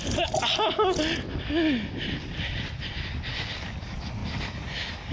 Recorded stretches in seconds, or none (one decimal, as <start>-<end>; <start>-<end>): 0.0-5.1